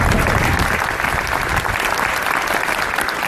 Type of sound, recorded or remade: recorded